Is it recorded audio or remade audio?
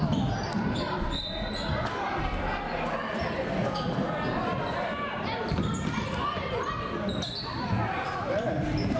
recorded